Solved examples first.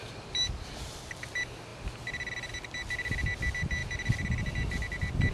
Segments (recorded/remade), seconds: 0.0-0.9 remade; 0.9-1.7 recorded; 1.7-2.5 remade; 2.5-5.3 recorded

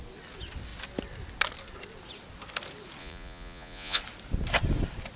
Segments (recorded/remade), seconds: 0.0-3.0 recorded; 3.0-4.0 remade; 4.0-5.2 recorded

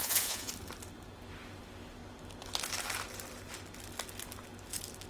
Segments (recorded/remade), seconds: 0.0-0.5 remade; 0.5-5.1 recorded

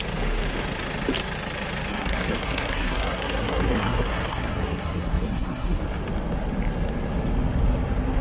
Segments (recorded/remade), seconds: 0.0-1.9 recorded; 1.9-5.8 remade; 5.8-8.2 recorded

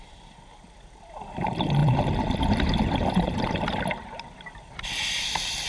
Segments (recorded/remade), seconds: 0.0-5.7 remade

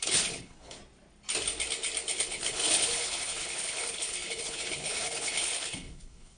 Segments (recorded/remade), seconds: 0.0-0.8 remade; 0.8-2.1 recorded; 2.1-6.4 remade